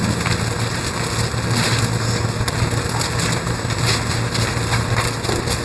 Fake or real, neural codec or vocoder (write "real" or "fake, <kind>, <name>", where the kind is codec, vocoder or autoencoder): real